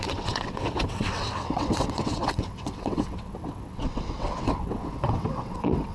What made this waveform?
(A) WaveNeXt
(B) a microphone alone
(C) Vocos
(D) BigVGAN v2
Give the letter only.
A